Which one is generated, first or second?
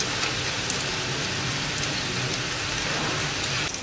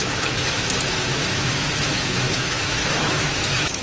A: second